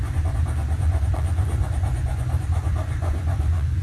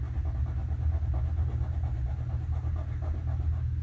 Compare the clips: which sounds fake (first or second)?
first